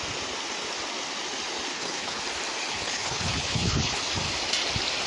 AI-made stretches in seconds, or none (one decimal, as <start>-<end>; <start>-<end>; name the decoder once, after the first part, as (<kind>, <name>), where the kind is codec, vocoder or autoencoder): 1.7-2.2 (codec, HILCodec); 2.7-4.0